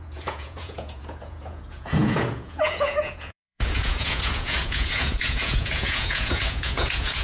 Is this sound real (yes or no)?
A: no